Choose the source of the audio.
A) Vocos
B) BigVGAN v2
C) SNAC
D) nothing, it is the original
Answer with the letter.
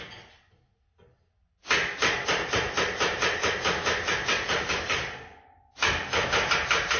D